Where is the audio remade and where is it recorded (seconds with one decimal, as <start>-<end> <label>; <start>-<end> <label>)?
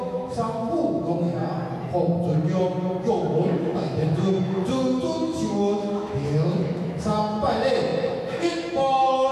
0.0-1.3 remade; 1.3-3.1 recorded; 3.1-9.3 remade